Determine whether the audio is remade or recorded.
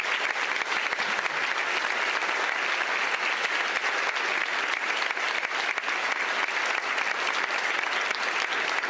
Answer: recorded